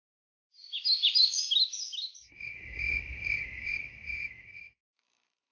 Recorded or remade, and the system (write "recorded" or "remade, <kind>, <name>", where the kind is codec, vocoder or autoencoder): remade, autoencoder, DAC-VAE